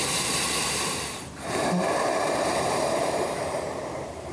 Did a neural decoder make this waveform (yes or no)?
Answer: yes